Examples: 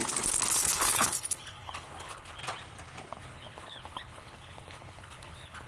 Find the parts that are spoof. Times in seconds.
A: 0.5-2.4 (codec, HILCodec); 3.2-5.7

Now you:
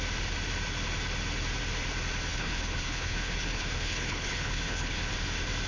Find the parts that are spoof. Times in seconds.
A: 2.3-5.1 (codec, HILCodec)

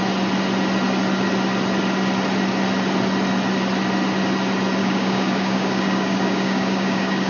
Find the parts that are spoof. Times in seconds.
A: 4.8-7.3 (codec, DAC)